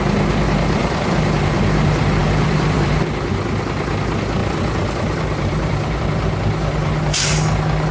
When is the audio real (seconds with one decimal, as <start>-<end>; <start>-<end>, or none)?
0.0-0.8; 1.5-2.2; 2.9-4.4; 6.0-7.9